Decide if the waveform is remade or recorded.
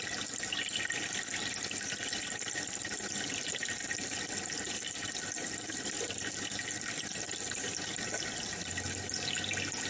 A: recorded